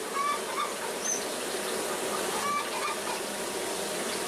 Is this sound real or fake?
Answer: real